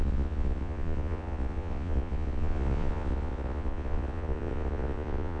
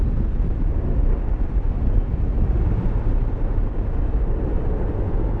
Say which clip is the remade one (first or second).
first